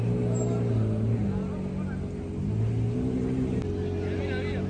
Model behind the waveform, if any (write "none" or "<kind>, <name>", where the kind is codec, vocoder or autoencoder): none